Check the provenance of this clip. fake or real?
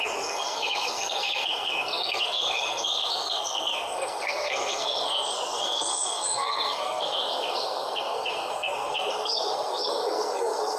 fake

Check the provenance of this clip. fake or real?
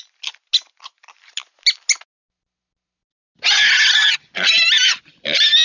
real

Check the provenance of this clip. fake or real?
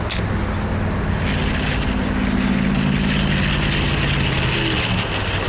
real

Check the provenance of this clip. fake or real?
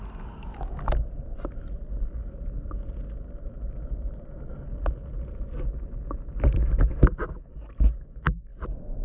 real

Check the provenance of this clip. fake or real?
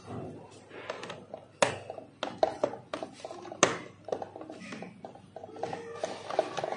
real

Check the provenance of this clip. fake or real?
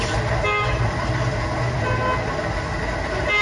real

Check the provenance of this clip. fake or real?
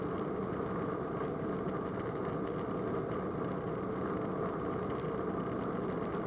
real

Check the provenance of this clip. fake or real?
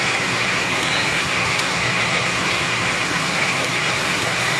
fake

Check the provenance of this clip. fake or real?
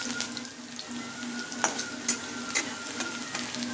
real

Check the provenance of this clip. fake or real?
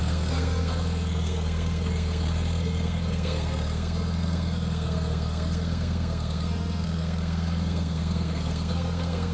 fake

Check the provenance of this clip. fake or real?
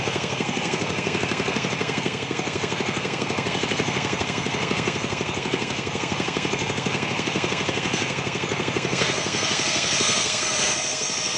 fake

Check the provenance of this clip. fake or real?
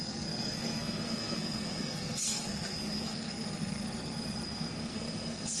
fake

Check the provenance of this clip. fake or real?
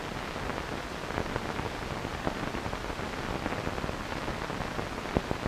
real